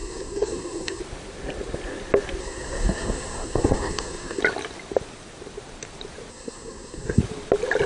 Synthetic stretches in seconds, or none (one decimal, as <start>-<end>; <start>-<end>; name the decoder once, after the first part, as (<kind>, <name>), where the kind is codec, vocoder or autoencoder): 0.0-1.0 (codec, SNAC); 2.4-4.4; 6.3-7.2